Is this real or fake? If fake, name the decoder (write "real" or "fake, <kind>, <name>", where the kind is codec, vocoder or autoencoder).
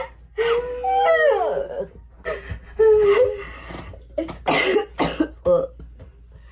real